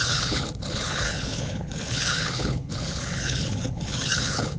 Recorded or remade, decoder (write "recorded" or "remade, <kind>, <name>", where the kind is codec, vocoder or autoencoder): remade, codec, HILCodec